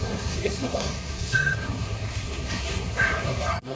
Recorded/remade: remade